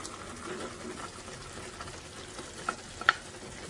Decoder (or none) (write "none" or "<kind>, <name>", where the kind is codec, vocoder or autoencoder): none